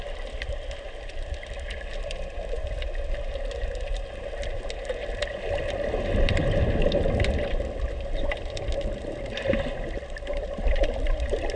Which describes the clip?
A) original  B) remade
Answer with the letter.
A